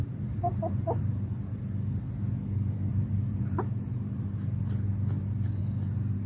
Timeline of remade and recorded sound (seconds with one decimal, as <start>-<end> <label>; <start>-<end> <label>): 0.0-2.9 recorded; 2.9-4.6 remade; 4.6-6.3 recorded